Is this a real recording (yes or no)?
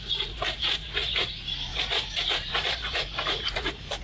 no